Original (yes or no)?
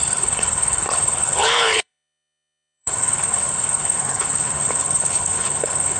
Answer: no